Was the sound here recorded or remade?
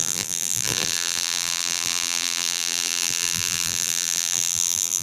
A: remade